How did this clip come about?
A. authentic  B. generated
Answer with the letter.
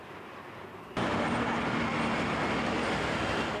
A